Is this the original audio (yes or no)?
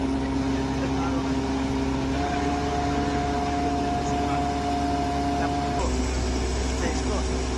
yes